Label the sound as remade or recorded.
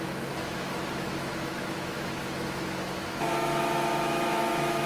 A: remade